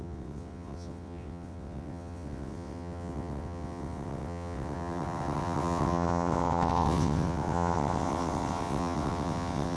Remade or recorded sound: remade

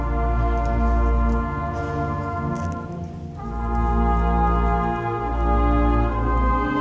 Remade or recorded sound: recorded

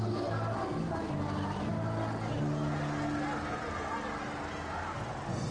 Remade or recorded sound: recorded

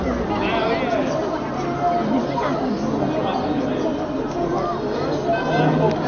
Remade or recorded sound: recorded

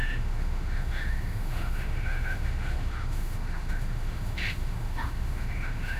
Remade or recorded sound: remade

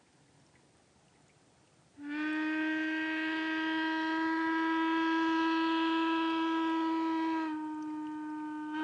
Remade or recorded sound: recorded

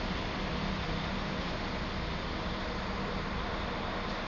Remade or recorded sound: recorded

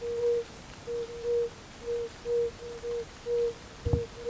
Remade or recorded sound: recorded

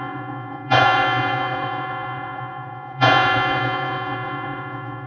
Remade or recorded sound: remade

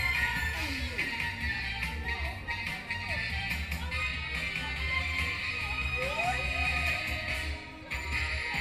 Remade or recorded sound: recorded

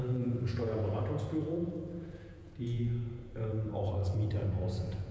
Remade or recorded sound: remade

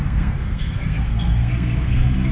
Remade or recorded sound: remade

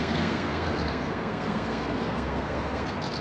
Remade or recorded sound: remade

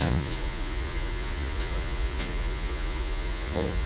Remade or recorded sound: remade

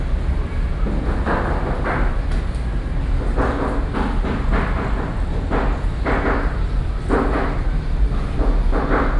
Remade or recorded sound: recorded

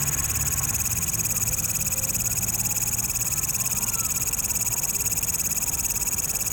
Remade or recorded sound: recorded